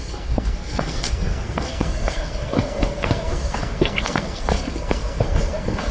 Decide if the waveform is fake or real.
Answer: fake